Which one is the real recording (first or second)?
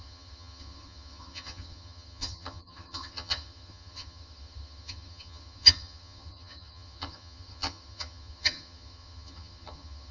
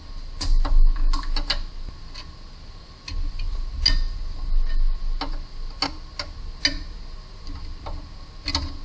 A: second